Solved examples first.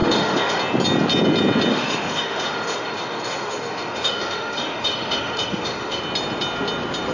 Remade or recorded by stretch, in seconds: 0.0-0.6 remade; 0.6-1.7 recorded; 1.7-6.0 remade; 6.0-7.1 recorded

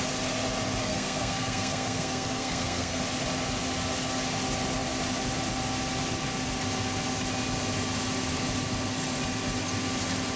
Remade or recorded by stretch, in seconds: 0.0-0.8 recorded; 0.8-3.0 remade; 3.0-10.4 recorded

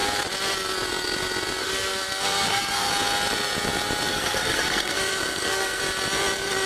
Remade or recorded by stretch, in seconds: 0.0-1.6 recorded; 1.6-2.9 remade; 2.9-4.1 recorded; 4.1-5.8 remade; 5.8-6.7 recorded

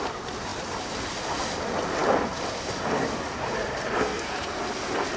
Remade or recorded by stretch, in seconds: 0.0-4.0 recorded; 4.0-4.6 remade; 4.6-5.2 recorded